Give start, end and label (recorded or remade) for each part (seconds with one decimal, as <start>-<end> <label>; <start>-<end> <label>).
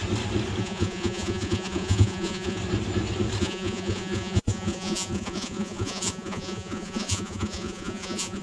0.0-0.6 recorded; 0.6-2.6 remade; 2.6-3.4 recorded; 3.4-8.4 remade